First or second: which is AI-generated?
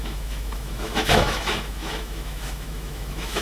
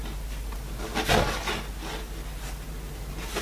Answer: first